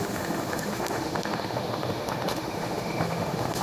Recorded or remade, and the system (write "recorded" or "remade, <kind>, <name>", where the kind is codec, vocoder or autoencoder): remade, autoencoder, DAC-VAE